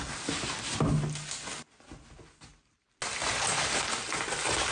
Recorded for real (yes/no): yes